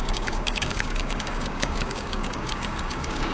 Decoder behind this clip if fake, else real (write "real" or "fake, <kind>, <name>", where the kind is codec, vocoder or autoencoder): fake, codec, DAC